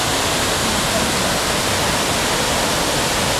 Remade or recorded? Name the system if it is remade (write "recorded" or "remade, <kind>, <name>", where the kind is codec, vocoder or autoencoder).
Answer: recorded